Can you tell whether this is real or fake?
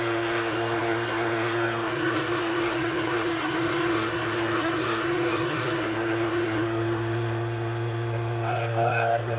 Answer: fake